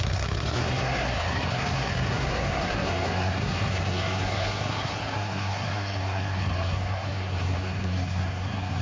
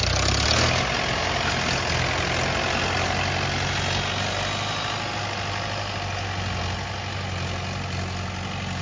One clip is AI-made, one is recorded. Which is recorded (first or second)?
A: second